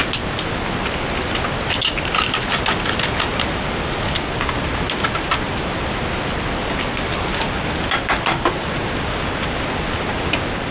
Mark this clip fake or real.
real